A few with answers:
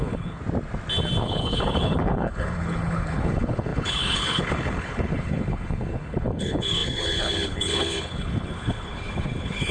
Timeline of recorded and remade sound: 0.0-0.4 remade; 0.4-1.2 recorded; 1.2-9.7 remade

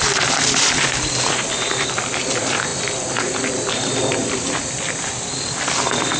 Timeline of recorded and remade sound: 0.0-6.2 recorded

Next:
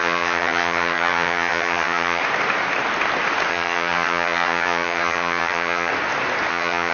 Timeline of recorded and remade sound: 0.0-2.2 remade; 2.2-3.5 recorded; 3.5-5.9 remade; 5.9-6.5 recorded; 6.5-6.9 remade

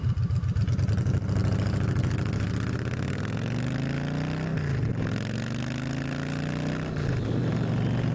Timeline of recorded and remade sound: 0.0-8.1 recorded

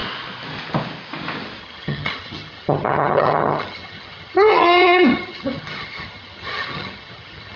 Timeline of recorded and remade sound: 0.0-1.6 recorded; 1.6-7.6 remade